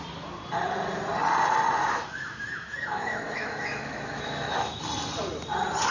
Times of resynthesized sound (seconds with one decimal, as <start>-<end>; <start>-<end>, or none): 1.8-4.8